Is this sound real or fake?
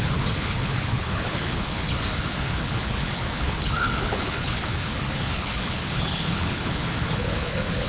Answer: fake